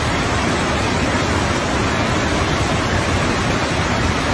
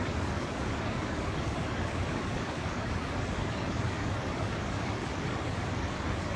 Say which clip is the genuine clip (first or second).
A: first